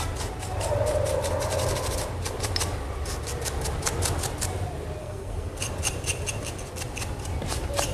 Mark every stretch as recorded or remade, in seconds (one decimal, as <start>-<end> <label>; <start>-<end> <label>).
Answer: 0.0-5.0 recorded; 5.0-5.6 remade; 5.6-7.9 recorded